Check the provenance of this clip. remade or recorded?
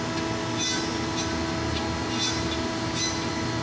recorded